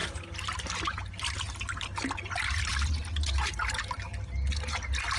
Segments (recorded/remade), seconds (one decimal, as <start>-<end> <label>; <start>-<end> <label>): 0.0-0.6 remade; 0.6-5.2 recorded